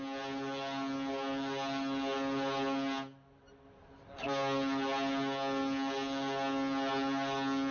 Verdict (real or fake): real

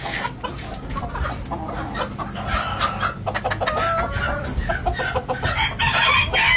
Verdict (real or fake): real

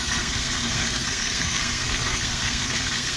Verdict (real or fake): fake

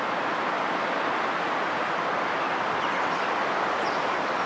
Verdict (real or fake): real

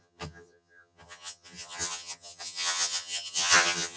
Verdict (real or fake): fake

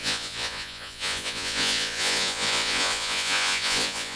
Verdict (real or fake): fake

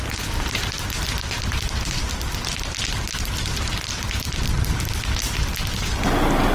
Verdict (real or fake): real